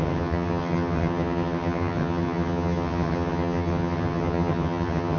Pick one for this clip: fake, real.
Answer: fake